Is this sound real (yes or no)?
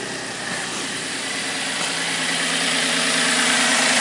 yes